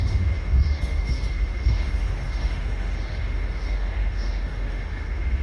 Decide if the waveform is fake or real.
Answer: fake